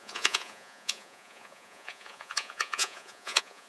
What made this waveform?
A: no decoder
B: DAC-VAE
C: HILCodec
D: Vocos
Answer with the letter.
D